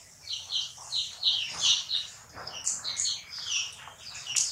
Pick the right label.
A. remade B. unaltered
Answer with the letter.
B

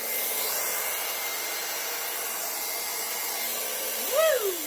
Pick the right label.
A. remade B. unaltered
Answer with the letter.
B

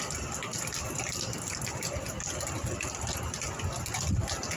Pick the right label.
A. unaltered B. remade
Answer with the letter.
A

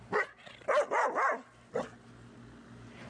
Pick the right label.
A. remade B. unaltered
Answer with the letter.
B